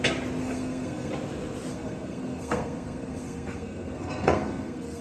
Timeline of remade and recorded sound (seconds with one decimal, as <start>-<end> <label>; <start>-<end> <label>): 0.0-0.4 recorded; 0.4-1.1 remade; 1.1-1.7 recorded; 1.7-5.0 remade